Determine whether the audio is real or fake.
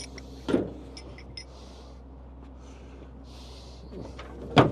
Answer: real